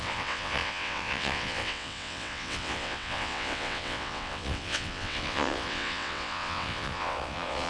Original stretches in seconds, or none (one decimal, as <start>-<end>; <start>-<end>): none